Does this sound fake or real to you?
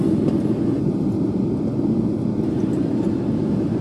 fake